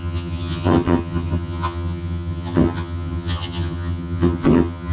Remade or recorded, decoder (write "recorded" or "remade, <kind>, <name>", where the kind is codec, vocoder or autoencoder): remade, vocoder, HiFi-GAN